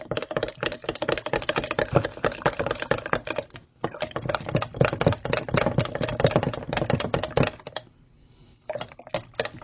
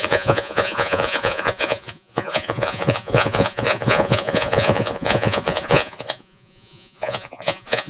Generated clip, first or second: second